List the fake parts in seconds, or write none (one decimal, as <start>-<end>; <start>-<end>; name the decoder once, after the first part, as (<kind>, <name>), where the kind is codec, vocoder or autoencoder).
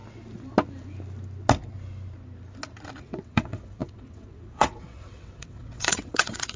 3.0-6.6 (vocoder, WaveNeXt)